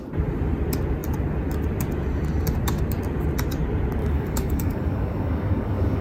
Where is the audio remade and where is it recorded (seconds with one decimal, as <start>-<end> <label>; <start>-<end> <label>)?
0.0-4.0 recorded; 4.0-6.0 remade